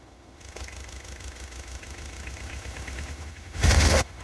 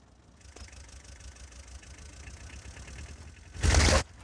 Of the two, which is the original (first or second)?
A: second